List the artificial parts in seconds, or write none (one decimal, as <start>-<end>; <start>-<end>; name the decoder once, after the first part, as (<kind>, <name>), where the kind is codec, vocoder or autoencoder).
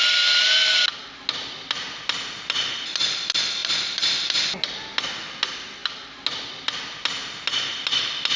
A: 3.6-4.5 (vocoder, BigVGAN v2)